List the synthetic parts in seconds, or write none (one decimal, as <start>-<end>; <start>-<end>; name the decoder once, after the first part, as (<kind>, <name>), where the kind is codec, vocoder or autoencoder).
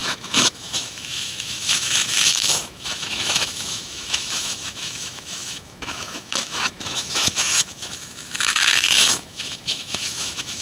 0.0-10.6 (autoencoder, DAC-VAE)